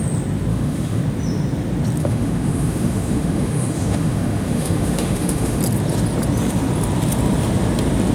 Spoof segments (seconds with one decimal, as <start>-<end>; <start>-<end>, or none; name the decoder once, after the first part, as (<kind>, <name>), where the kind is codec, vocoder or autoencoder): 0.5-1.0 (autoencoder, DAC-VAE); 2.0-5.6